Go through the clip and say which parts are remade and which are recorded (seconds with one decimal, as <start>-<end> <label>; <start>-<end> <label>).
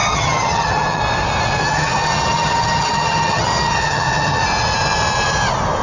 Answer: 0.0-1.0 remade; 1.0-1.6 recorded; 1.6-4.4 remade; 4.4-5.8 recorded